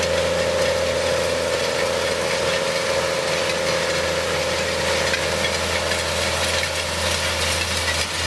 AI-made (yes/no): no